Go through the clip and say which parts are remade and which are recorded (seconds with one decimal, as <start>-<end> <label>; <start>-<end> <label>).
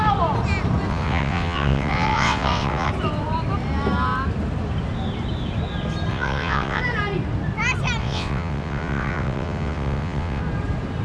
0.0-0.9 recorded; 0.9-2.9 remade; 2.9-6.1 recorded; 6.1-6.8 remade; 6.8-8.0 recorded; 8.0-10.4 remade; 10.4-11.0 recorded